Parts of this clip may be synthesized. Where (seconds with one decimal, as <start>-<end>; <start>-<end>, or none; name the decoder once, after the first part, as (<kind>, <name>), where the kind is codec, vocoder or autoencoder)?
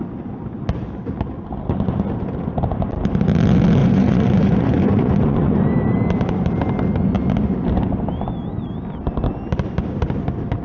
3.8-5.6 (vocoder, Vocos)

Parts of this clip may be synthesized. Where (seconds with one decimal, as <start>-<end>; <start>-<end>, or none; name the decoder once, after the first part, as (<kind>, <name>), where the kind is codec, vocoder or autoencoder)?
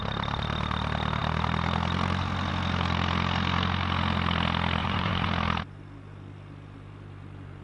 4.8-5.3 (vocoder, Vocos)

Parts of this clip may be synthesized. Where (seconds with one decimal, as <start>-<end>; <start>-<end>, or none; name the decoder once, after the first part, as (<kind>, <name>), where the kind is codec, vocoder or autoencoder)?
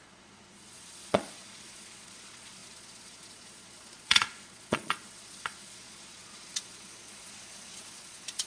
0.0-8.5 (vocoder, Vocos)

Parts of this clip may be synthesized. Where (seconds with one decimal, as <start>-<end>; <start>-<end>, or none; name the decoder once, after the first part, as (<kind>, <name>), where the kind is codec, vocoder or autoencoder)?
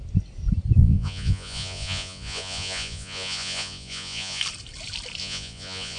0.8-4.4 (vocoder, Vocos); 5.2-6.0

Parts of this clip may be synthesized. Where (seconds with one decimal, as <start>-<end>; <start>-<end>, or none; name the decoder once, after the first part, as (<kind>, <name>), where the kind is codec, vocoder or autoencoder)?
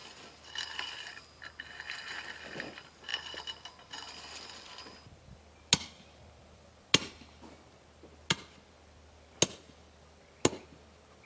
none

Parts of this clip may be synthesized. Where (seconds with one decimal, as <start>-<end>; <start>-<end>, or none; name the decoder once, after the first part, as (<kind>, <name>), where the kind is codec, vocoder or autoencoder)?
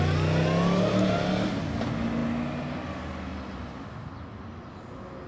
none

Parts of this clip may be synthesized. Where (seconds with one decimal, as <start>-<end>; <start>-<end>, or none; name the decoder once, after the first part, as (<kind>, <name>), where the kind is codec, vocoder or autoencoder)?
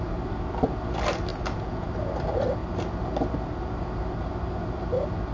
1.3-1.9 (vocoder, Vocos)